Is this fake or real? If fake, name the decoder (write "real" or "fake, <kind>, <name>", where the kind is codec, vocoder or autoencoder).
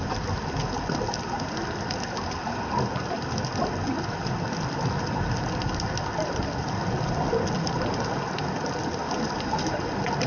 real